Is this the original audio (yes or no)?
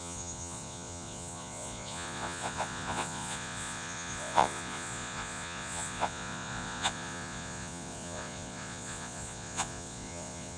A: no